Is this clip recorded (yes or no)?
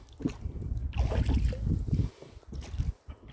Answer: yes